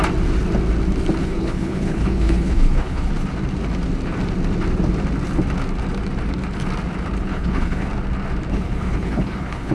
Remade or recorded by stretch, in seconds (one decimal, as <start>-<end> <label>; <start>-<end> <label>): 0.0-1.2 recorded; 1.2-3.1 remade; 3.1-7.3 recorded; 7.3-7.9 remade; 7.9-8.5 recorded; 8.5-9.7 remade